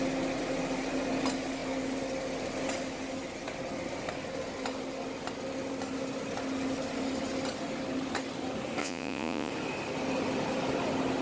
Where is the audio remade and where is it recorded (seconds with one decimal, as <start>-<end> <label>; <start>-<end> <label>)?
0.0-8.8 recorded; 8.8-9.5 remade; 9.5-11.2 recorded